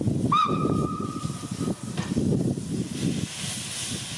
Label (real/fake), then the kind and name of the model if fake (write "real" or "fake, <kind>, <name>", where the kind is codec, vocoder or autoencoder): real